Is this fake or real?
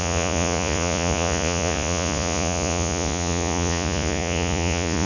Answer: fake